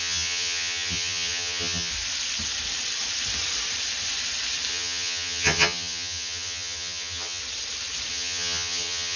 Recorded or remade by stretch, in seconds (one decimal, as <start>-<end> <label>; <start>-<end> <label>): 0.0-1.9 remade; 1.9-4.7 recorded; 4.7-7.4 remade; 7.4-8.1 recorded; 8.1-9.2 remade